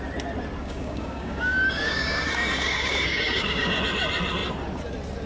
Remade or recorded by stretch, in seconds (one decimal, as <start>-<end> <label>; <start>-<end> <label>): 0.0-0.6 recorded; 0.6-3.8 remade; 3.8-5.3 recorded